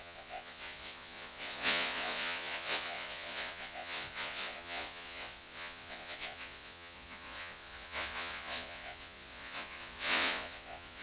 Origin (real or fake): fake